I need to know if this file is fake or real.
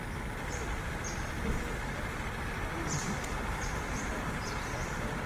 fake